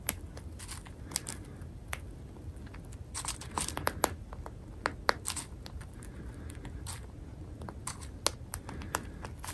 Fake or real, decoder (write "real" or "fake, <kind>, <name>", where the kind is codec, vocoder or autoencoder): real